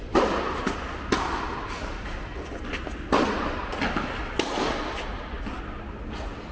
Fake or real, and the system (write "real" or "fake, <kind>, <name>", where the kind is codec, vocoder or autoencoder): real